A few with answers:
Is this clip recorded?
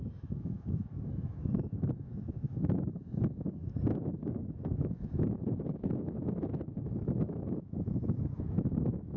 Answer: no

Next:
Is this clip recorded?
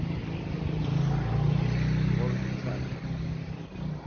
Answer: yes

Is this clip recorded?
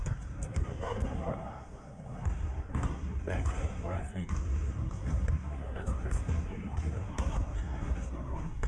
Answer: no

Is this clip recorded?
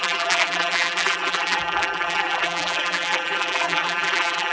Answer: no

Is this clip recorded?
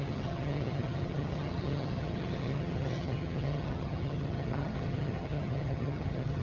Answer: no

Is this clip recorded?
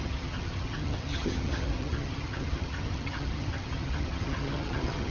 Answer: no